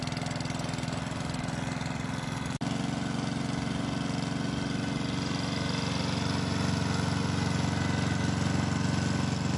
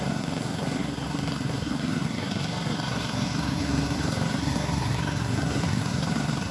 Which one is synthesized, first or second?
second